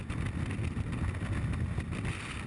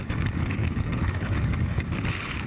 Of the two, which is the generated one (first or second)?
second